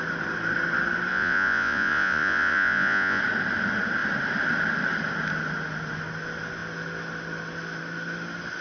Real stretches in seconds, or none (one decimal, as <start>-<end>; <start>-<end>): 0.0-1.1; 3.2-8.6

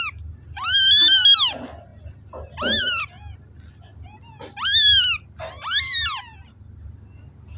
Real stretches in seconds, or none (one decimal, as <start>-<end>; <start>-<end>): 0.0-7.6